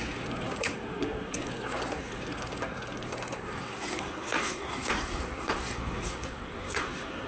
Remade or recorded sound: remade